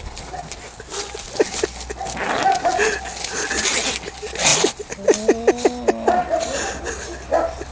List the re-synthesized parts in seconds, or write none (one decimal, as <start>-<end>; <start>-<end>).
6.2-6.7